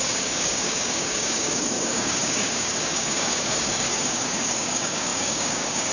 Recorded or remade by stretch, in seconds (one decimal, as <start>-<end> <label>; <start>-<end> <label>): 0.0-5.9 remade

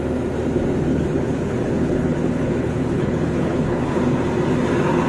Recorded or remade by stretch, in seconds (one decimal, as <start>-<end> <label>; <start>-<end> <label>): 0.0-0.9 recorded; 0.9-4.0 remade; 4.0-5.1 recorded

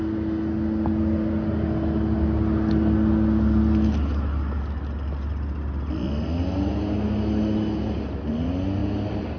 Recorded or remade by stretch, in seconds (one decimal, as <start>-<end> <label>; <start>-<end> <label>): 0.0-9.4 recorded

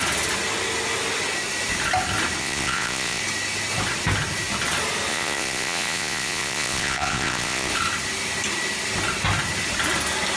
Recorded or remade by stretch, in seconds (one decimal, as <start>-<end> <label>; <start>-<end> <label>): 0.0-2.4 recorded; 2.4-3.2 remade; 3.2-5.1 recorded; 5.1-7.7 remade; 7.7-10.4 recorded

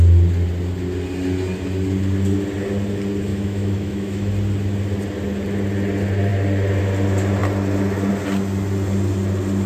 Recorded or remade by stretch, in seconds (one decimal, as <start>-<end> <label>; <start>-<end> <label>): 0.0-3.3 recorded; 3.3-4.3 remade; 4.3-9.7 recorded

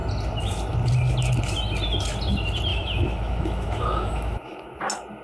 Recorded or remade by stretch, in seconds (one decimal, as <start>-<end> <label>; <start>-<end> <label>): 0.0-2.7 recorded; 2.7-4.8 remade; 4.8-5.2 recorded

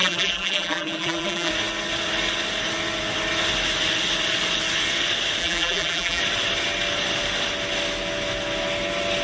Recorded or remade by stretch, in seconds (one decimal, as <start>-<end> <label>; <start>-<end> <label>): 0.0-1.5 remade; 1.5-5.4 recorded; 5.4-6.2 remade; 6.2-9.2 recorded